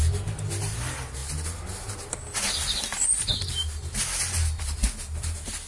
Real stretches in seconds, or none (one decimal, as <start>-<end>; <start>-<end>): 0.0-5.7